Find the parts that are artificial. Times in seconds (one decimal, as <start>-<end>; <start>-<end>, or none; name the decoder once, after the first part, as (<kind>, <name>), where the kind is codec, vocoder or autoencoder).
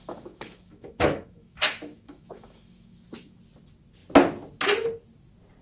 0.0-3.4 (autoencoder, DAC-VAE)